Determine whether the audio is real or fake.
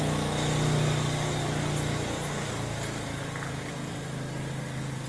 real